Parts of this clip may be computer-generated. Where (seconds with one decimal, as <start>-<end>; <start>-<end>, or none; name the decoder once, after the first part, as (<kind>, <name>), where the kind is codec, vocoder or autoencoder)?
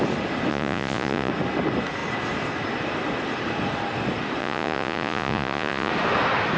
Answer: 0.5-1.3 (vocoder, Vocos); 4.4-5.9